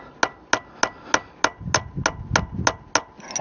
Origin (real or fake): real